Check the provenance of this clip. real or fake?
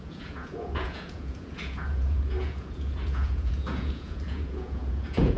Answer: fake